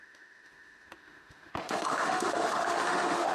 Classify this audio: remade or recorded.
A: remade